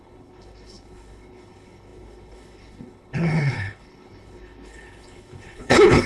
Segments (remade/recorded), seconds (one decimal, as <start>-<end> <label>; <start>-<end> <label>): 0.0-6.1 remade